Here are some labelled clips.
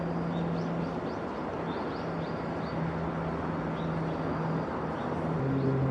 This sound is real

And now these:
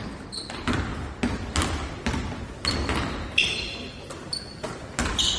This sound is real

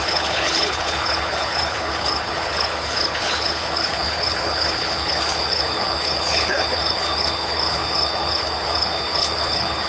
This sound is fake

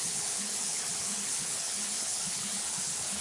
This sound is fake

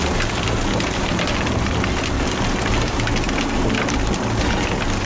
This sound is real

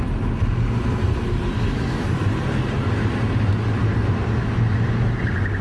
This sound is real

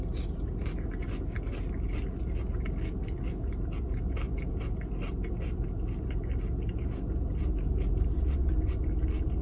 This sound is real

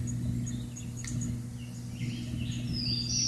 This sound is real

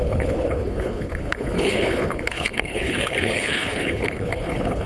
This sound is fake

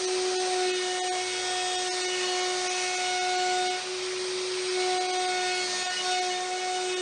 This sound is real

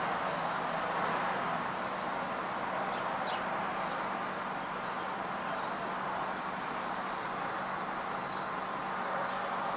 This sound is real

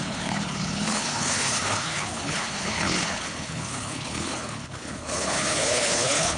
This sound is fake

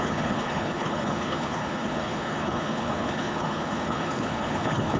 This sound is fake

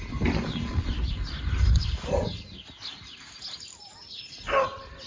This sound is real